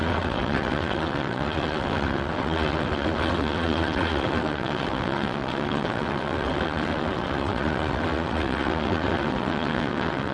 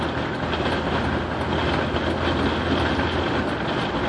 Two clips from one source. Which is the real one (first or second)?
second